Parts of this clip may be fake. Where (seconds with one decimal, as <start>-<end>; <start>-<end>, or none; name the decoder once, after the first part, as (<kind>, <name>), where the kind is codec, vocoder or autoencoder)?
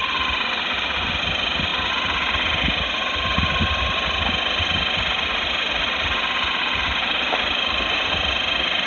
6.6-8.1 (vocoder, BigVGAN v2)